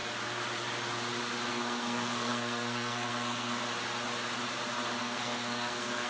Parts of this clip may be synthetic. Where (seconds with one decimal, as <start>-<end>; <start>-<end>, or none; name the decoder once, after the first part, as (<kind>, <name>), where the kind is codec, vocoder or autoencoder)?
1.5-3.6 (codec, SNAC); 5.0-6.1